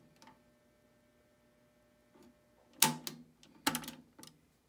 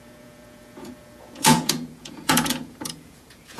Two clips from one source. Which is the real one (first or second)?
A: first